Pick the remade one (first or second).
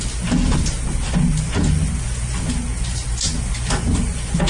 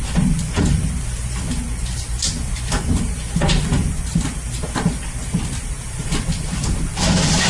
second